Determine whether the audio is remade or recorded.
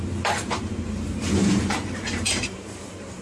remade